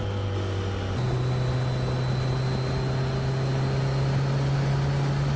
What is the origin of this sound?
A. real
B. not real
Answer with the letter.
A